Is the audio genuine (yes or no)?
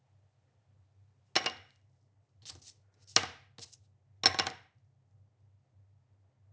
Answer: yes